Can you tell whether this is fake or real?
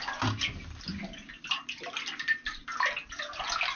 real